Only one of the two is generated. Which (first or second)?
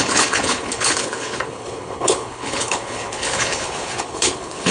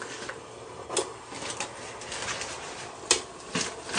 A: first